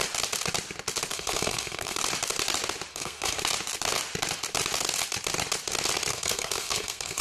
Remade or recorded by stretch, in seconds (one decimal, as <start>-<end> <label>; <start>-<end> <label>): 0.0-1.1 recorded; 1.1-2.0 remade; 2.0-2.9 recorded; 2.9-3.4 remade; 3.4-6.1 recorded; 6.1-7.2 remade